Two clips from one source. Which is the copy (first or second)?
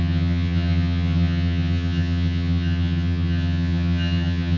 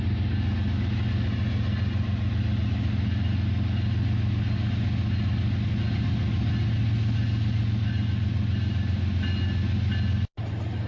first